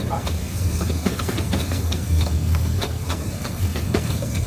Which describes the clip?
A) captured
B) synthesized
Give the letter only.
B